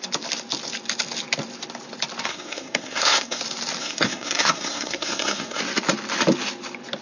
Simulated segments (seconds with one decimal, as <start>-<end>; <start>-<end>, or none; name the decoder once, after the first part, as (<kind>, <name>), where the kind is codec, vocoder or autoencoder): 2.3-3.4 (codec, SNAC); 3.8-5.6